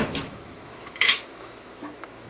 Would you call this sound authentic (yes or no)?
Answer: no